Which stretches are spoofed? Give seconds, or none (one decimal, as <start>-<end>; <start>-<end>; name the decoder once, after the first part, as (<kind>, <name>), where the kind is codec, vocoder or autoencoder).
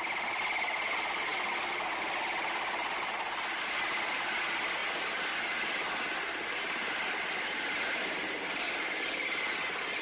none